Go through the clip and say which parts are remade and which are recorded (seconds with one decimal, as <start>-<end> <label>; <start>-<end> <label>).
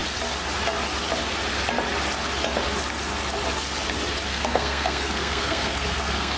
0.0-4.3 recorded; 4.3-6.4 remade